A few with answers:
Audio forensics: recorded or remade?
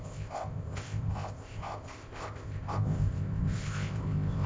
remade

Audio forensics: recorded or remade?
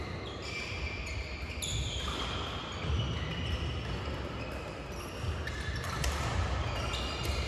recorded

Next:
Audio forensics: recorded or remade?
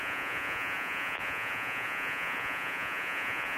remade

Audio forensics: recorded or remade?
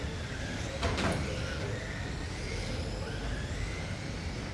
recorded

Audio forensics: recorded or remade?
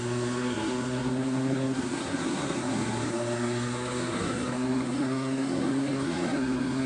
remade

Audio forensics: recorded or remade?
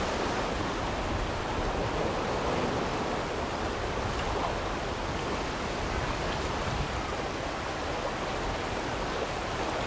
recorded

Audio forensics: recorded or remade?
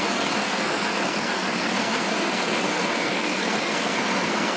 remade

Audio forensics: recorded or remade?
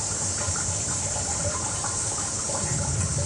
remade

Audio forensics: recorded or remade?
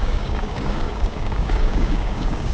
remade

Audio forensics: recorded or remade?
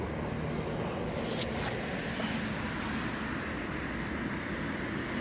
recorded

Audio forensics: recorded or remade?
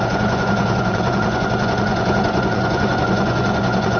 remade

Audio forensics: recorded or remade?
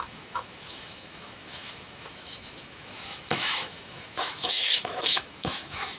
remade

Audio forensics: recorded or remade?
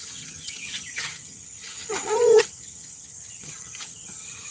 remade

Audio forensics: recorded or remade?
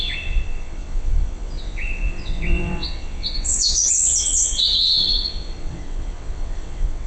remade